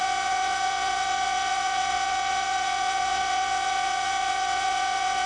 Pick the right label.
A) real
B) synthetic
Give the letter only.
B